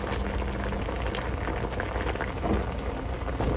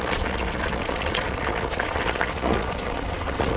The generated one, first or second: second